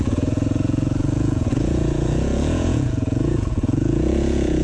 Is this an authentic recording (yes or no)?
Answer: no